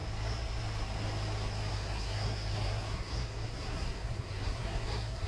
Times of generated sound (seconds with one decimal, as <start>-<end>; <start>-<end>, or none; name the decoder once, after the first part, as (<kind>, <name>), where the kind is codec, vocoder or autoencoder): 1.7-5.3 (codec, SNAC)